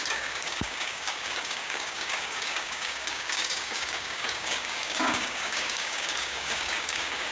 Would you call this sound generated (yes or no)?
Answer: yes